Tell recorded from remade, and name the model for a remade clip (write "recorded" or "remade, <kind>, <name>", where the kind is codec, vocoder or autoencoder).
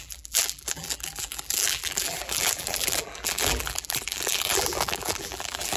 remade, vocoder, BigVGAN v2